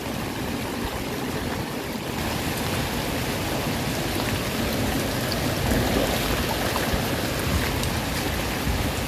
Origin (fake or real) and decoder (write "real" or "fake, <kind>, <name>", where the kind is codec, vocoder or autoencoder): real